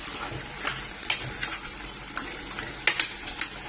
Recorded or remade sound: recorded